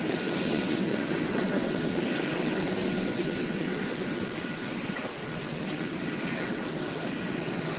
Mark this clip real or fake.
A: fake